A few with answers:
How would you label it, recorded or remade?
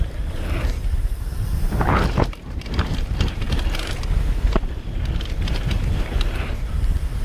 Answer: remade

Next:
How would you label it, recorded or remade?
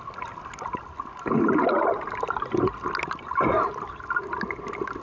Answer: recorded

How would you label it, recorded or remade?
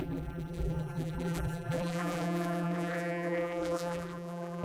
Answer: remade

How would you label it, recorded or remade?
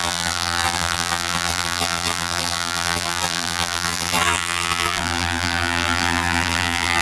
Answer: remade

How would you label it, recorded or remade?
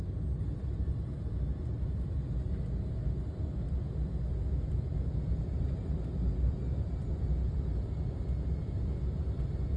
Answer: recorded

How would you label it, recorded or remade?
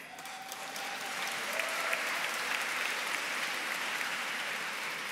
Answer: remade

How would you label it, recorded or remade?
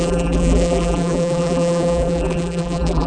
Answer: remade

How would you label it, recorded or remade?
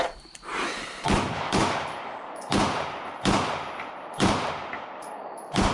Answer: remade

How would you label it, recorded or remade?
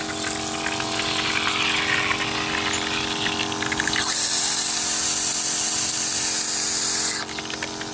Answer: recorded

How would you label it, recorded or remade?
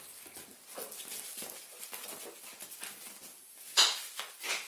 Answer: recorded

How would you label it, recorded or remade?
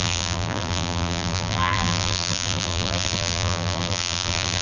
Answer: remade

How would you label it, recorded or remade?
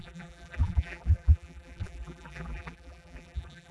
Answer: remade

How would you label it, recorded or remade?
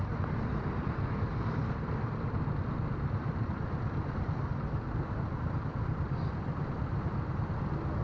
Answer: remade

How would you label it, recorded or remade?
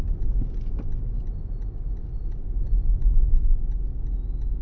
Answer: recorded